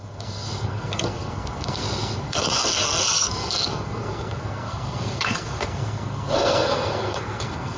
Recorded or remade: remade